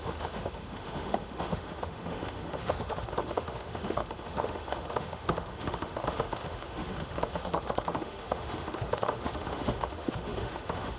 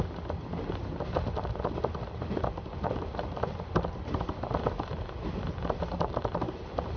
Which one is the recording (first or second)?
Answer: second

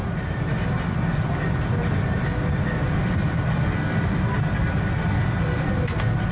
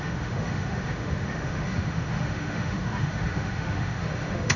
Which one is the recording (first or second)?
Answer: first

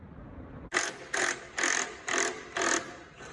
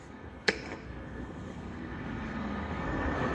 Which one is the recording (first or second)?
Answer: first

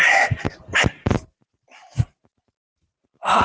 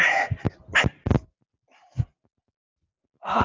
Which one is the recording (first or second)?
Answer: second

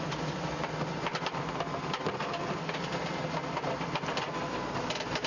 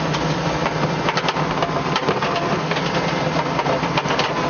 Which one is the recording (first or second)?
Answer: second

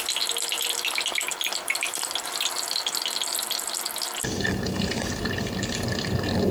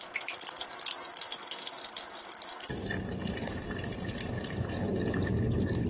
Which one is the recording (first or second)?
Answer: first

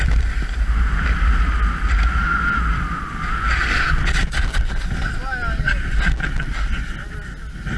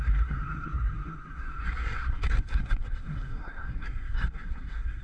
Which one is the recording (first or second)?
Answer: first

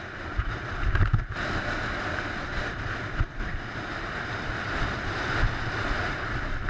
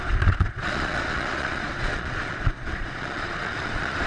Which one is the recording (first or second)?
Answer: first